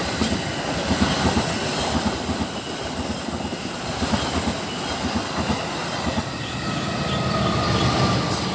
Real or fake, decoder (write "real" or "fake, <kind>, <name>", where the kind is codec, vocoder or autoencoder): real